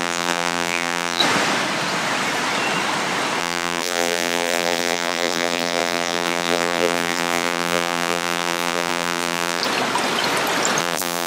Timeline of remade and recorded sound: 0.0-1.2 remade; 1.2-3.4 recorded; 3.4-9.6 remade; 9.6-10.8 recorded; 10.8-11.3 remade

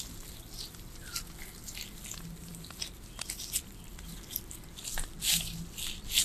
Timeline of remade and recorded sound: 0.0-6.2 recorded

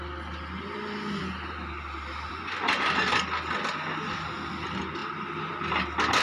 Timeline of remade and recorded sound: 0.0-6.2 recorded